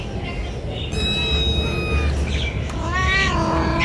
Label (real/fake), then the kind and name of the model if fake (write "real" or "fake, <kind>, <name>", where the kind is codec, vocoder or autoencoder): real